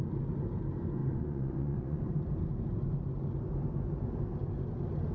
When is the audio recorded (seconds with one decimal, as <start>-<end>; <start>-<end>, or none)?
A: 0.0-1.0; 2.0-5.1

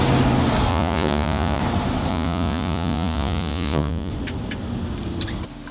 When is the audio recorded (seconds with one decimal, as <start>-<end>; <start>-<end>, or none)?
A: 0.0-0.7; 1.6-2.1; 4.1-5.7

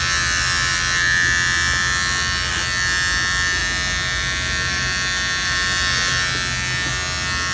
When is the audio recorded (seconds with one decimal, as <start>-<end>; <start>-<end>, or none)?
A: 0.0-7.5

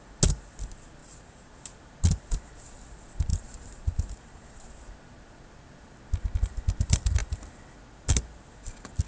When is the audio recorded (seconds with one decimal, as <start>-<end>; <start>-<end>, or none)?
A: 0.0-1.0; 1.5-3.3; 4.8-9.1